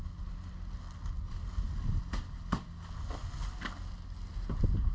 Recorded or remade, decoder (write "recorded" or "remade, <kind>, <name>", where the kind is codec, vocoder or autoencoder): recorded